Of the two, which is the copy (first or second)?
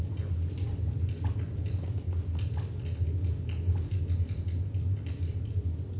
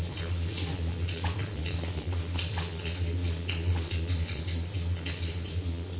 second